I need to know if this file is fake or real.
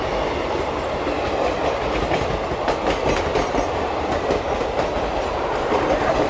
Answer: real